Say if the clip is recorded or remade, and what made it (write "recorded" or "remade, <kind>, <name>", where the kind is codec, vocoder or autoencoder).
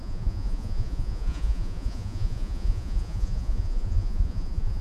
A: remade, vocoder, Vocos